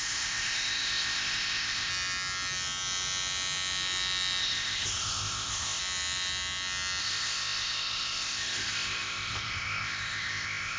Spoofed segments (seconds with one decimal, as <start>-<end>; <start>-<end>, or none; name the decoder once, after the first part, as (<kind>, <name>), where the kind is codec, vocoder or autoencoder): 0.0-1.9 (codec, ZipCodec); 4.4-5.8; 7.0-10.8